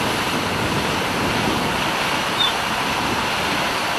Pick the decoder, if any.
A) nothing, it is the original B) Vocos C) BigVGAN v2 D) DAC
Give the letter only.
A